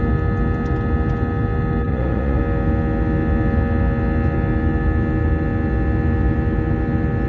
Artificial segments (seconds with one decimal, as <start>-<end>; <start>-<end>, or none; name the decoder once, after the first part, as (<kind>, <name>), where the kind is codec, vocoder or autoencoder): 1.9-2.4 (vocoder, Vocos)